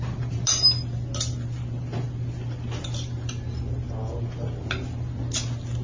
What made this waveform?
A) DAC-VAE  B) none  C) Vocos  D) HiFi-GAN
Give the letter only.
B